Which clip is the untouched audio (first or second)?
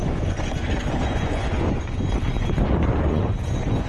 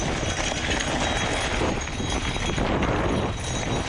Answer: second